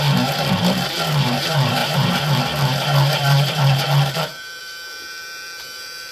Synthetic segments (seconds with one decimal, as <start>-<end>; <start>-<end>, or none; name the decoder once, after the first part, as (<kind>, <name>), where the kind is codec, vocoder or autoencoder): 0.0-6.1 (vocoder, BigVGAN v2)